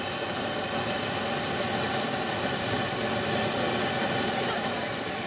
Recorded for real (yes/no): yes